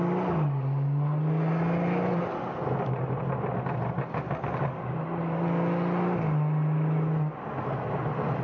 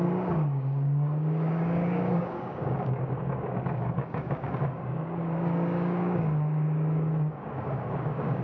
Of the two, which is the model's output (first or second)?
second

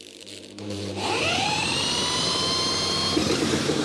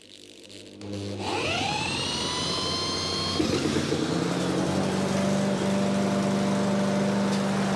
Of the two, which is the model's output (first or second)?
first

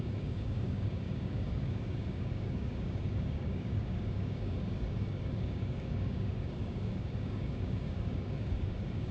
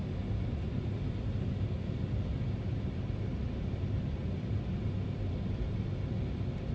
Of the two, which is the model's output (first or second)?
first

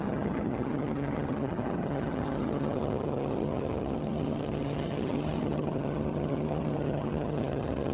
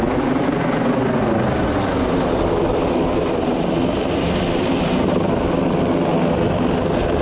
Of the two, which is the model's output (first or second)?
first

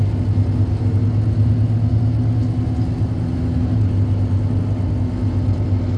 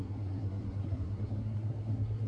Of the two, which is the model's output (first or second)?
second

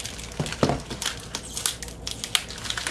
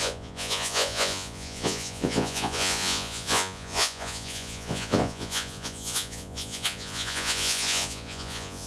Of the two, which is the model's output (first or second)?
second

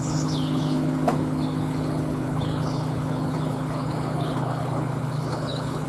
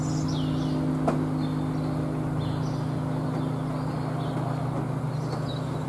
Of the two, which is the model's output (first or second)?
first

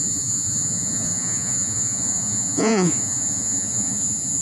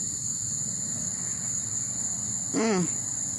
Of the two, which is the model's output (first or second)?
first